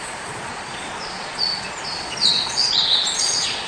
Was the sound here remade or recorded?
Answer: remade